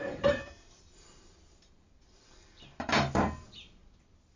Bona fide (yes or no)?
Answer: no